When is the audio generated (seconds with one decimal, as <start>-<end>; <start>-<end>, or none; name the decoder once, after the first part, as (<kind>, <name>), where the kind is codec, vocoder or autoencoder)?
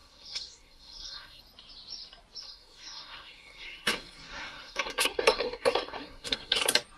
0.0-1.4 (codec, SNAC); 2.4-6.6